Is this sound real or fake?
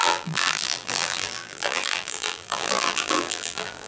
fake